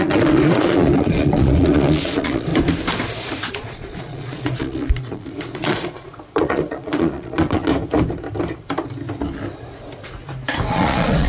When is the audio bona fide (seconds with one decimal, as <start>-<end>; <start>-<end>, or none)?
2.5-3.5; 7.7-10.7